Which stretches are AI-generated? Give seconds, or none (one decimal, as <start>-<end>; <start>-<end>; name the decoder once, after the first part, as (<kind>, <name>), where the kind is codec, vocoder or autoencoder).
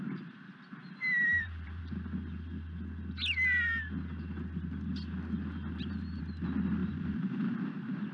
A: 0.8-1.8 (vocoder, BigVGAN v2); 5.7-6.2; 6.8-8.1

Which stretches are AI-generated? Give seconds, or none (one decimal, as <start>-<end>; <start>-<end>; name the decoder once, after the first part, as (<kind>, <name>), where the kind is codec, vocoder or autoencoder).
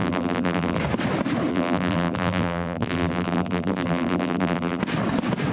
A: 0.0-0.8 (vocoder, BigVGAN v2); 1.5-4.8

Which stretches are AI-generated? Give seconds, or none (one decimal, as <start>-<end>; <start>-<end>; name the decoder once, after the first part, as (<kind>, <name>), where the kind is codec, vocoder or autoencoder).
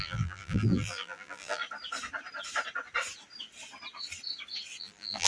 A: 0.0-1.6 (vocoder, BigVGAN v2); 4.8-5.3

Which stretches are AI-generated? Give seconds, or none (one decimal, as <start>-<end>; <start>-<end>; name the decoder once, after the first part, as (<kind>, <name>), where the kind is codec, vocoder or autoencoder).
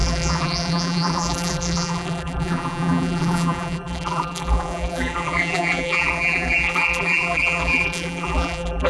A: 0.0-8.9 (vocoder, BigVGAN v2)